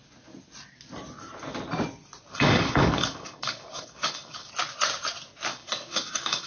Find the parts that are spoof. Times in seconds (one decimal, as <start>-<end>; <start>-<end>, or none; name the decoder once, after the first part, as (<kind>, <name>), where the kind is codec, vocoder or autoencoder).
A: 2.3-4.5 (codec, DAC); 5.5-6.5